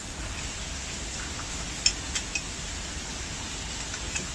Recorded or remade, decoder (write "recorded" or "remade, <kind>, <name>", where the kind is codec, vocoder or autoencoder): recorded